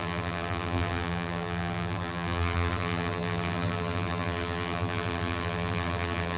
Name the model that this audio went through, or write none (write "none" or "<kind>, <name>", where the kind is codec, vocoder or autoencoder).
vocoder, BigVGAN v2